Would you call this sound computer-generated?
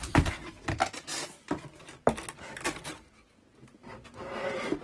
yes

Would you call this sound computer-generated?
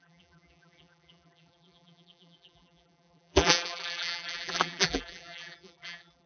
yes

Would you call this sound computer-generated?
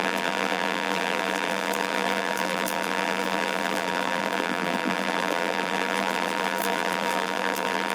yes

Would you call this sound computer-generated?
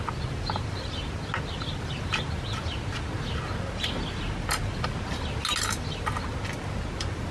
no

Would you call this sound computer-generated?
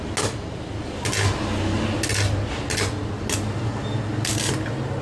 no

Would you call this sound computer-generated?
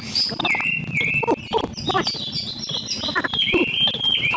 no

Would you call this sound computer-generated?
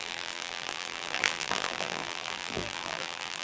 yes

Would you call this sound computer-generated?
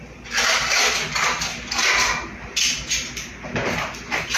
no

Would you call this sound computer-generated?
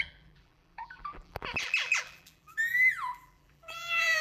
yes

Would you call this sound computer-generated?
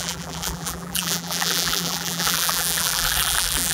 yes